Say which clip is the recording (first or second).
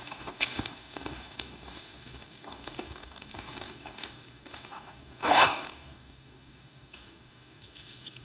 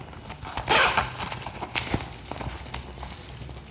second